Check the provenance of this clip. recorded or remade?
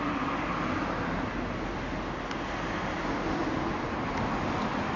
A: recorded